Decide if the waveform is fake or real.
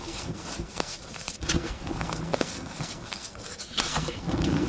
fake